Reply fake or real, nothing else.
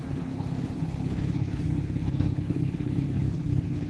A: fake